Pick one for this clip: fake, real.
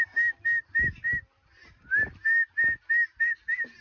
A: real